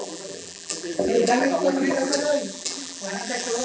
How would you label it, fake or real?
fake